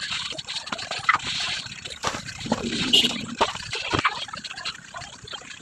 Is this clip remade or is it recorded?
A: remade